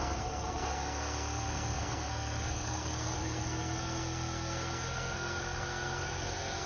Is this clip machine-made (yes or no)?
yes